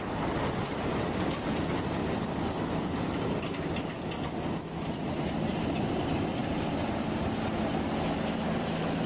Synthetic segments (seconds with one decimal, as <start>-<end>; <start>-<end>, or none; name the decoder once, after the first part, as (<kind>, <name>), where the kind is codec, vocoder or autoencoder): none